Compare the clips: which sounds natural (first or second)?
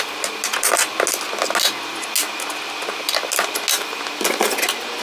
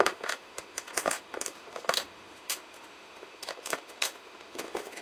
first